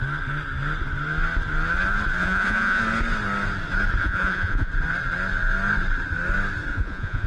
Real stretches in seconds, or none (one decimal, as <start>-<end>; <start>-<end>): 0.0-2.2; 2.8-4.0; 4.7-6.7